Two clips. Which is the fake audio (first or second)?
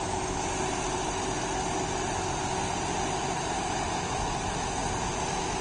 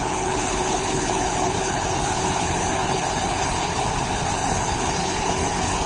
second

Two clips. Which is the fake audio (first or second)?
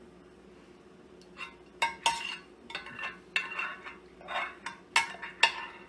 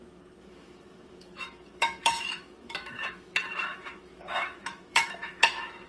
second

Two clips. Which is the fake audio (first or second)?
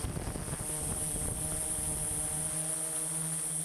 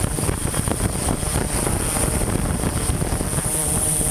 second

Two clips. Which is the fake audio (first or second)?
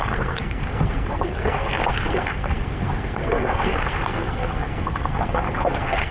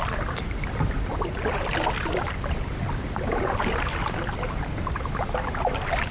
first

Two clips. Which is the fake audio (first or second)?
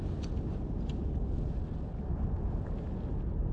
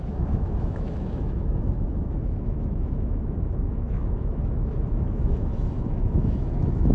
second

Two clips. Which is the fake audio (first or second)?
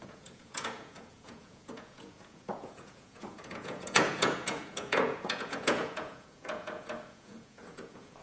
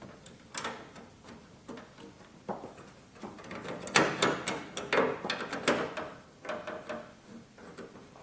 first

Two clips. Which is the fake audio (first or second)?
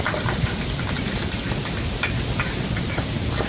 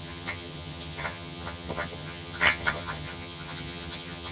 second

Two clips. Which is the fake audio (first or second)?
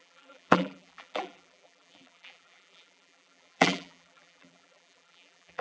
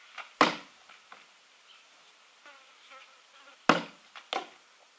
first